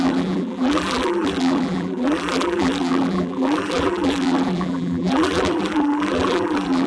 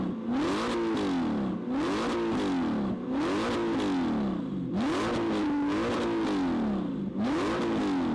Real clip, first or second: second